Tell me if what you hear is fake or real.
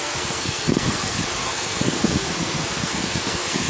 fake